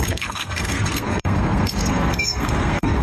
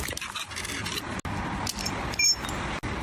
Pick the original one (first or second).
second